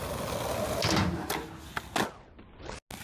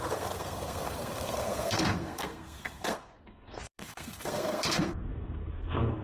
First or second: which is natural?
first